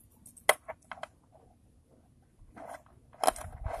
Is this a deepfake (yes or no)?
no